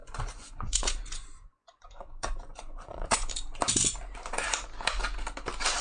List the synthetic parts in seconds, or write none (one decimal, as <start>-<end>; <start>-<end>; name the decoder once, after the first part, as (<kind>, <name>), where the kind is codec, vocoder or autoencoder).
0.0-3.3 (vocoder, Vocos)